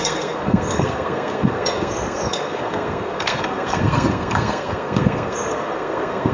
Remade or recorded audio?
remade